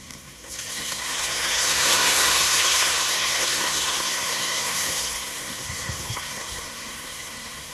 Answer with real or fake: fake